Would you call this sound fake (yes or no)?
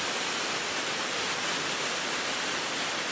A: no